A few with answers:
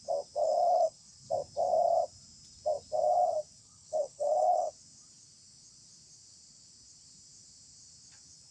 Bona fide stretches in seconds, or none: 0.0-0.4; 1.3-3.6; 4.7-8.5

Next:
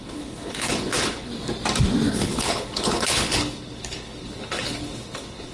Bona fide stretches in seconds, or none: 1.3-2.1

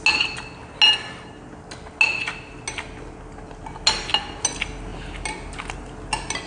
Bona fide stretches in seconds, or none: 0.0-6.5

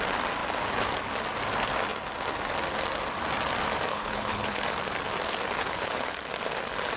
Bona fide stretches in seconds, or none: 0.0-3.9; 4.6-5.6; 6.2-7.0

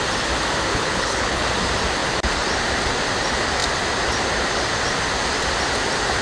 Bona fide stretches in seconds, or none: 0.0-0.7; 1.5-6.2

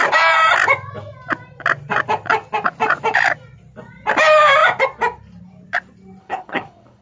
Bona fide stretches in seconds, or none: 0.0-6.2

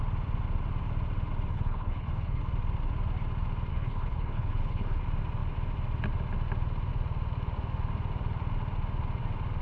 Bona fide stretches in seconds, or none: 0.0-1.5; 2.4-3.7; 5.0-9.6

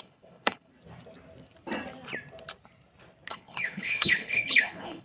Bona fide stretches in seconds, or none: 0.7-3.3